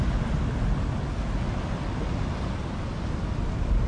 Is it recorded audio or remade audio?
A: recorded